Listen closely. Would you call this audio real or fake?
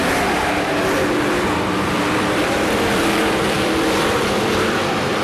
fake